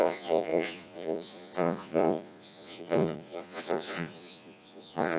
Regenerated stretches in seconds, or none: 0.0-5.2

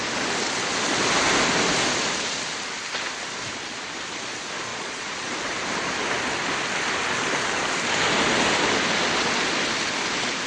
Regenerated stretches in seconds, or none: 4.7-5.3

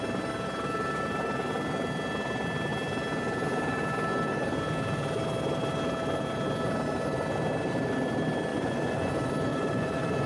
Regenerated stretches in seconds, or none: 8.5-9.1; 9.5-10.3

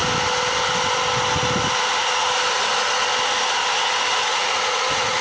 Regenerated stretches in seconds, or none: 4.3-5.2

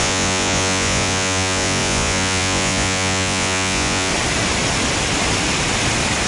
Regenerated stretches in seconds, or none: 0.0-4.1